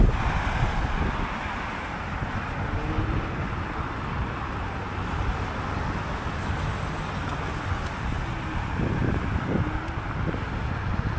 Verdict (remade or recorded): recorded